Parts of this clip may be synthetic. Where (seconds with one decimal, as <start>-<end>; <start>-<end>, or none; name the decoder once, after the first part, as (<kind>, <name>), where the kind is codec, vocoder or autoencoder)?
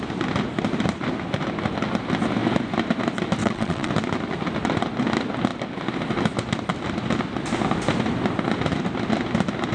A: 3.4-3.9 (vocoder, WaveNeXt)